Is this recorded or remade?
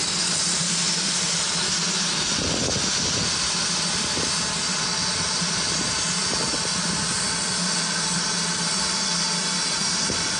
recorded